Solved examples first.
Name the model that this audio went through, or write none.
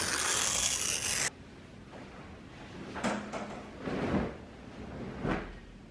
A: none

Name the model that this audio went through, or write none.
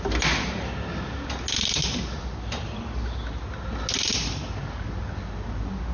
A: none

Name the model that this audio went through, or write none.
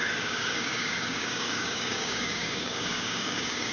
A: codec, DAC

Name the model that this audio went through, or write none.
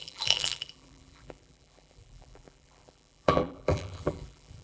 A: vocoder, BigVGAN v2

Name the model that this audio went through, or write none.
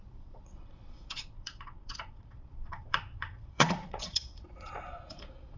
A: vocoder, Vocos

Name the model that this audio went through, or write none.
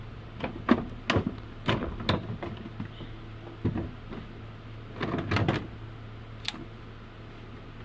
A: none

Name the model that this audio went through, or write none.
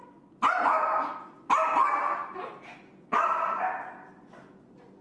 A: none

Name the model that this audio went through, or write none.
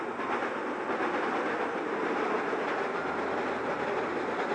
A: none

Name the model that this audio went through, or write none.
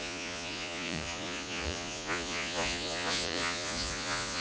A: vocoder, Vocos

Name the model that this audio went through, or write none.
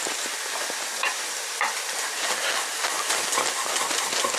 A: none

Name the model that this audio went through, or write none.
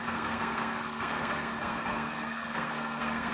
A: codec, SNAC